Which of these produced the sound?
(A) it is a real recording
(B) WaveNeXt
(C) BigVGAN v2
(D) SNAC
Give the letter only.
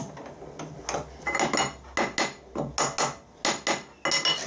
A